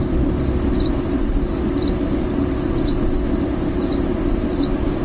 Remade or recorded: recorded